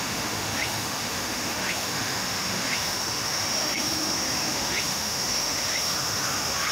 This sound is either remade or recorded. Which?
remade